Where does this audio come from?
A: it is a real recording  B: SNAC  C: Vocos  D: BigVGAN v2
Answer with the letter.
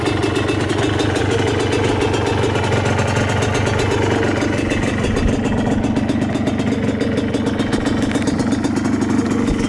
A